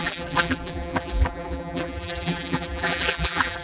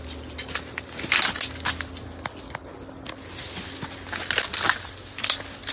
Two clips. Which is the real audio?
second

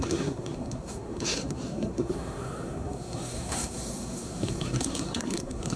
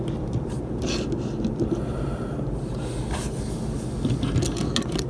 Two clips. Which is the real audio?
second